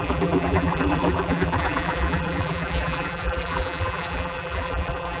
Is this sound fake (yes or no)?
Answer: yes